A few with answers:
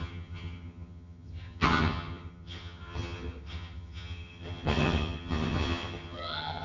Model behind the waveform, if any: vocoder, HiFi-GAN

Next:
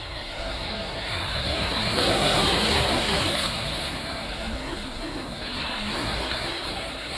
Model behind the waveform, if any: codec, SNAC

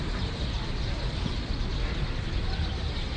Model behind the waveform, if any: none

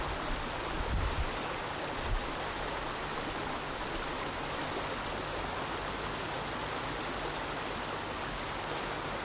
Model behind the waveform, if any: none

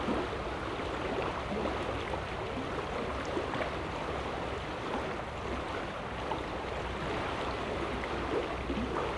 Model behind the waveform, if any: none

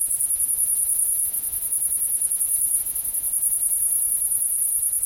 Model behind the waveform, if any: vocoder, Vocos